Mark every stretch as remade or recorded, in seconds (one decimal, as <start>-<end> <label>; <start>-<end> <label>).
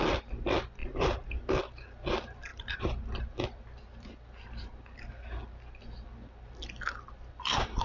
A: 0.0-0.8 recorded; 0.8-1.5 remade; 1.5-2.5 recorded; 2.5-3.2 remade; 3.2-7.8 recorded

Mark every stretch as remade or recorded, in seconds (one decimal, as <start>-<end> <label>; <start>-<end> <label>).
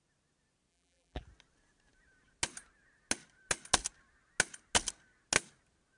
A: 0.0-0.7 recorded; 0.7-1.2 remade; 1.2-6.0 recorded